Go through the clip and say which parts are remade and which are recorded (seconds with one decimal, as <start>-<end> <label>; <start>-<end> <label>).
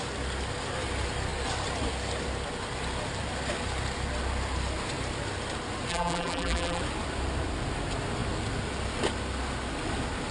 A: 0.0-5.9 recorded; 5.9-6.8 remade; 6.8-10.3 recorded